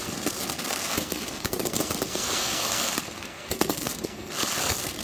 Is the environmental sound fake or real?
fake